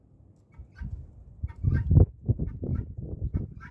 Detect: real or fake real